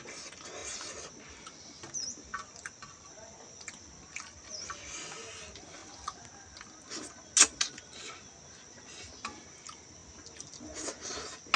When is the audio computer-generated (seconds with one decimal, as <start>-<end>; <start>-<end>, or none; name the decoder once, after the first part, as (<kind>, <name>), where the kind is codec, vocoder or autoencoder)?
2.3-4.4 (vocoder, BigVGAN v2)